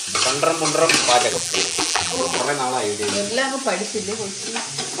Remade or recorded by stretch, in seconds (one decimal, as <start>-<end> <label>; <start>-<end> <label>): 0.0-1.3 recorded; 1.3-2.4 remade; 2.4-5.0 recorded